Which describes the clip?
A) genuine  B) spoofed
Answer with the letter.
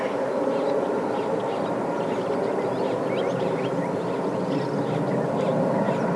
A